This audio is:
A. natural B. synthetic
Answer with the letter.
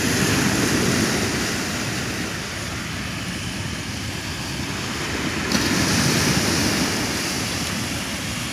A